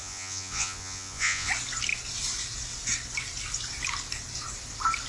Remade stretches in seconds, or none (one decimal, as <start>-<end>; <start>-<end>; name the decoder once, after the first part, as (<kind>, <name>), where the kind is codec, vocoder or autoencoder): 0.0-1.5 (vocoder, Vocos)